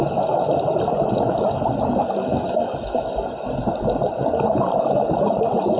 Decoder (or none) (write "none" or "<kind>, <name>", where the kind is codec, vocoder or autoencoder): none